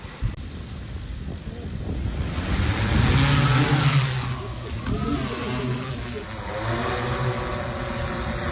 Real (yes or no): yes